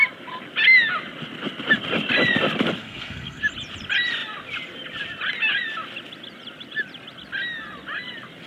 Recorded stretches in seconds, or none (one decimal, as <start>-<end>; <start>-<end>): 0.0-2.8; 3.4-8.5

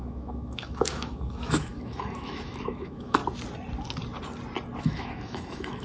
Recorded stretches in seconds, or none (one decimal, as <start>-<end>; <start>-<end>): 3.2-4.8

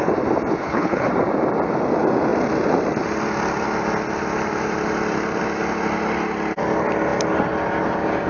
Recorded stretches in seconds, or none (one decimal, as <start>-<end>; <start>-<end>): 0.0-0.6; 1.1-8.3

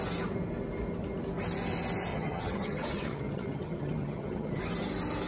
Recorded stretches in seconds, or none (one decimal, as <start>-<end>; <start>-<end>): 0.0-2.1; 4.6-5.3

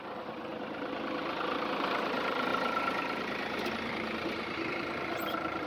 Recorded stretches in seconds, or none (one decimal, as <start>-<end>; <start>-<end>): 0.5-1.6; 2.5-4.7